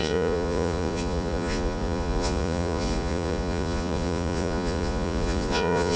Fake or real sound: fake